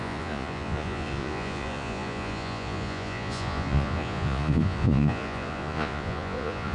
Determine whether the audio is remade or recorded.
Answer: remade